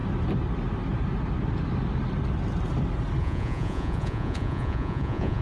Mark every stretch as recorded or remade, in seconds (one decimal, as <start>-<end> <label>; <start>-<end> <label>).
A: 0.0-3.2 recorded; 3.2-5.4 remade